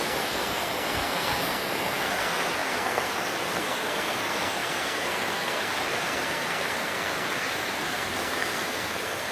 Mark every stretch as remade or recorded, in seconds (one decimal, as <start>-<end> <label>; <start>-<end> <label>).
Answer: 0.0-9.3 remade